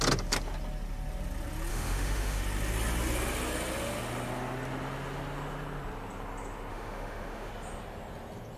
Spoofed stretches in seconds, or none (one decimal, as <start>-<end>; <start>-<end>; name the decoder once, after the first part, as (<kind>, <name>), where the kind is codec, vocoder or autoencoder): 1.7-2.4 (autoencoder, DAC-VAE); 6.7-7.5